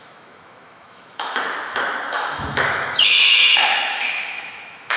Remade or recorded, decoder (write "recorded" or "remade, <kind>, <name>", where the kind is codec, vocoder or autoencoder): remade, autoencoder, DAC-VAE